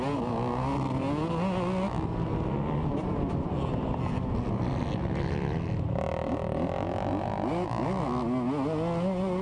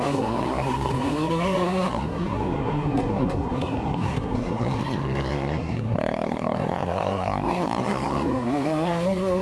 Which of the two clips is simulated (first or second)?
second